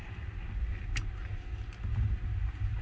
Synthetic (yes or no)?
no